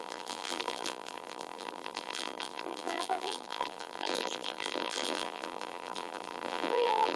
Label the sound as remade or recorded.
remade